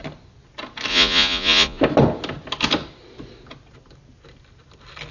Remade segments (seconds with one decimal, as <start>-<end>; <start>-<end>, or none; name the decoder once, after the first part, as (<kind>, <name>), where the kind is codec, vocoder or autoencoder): 0.9-1.8 (vocoder, Vocos)